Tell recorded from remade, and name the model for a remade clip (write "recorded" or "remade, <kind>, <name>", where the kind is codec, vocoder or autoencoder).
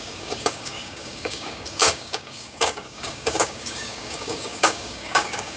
remade, codec, DAC